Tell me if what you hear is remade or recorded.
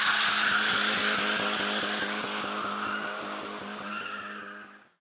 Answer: recorded